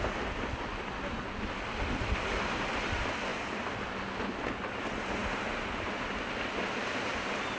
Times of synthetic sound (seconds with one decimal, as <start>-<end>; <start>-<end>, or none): none